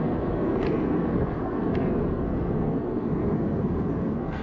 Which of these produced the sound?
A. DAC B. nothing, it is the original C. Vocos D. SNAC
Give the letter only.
D